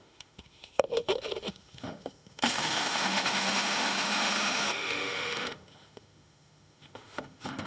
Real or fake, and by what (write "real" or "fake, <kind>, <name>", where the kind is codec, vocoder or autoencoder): fake, autoencoder, DAC-VAE